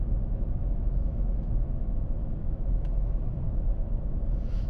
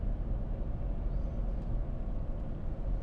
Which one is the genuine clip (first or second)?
second